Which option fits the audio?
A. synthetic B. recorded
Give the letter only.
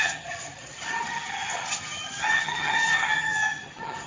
A